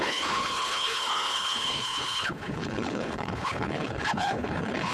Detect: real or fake fake